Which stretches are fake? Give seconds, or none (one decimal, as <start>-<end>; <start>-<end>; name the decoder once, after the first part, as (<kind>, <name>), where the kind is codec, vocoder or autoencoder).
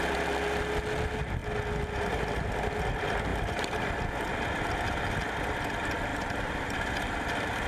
3.3-3.9 (vocoder, BigVGAN v2); 6.1-7.7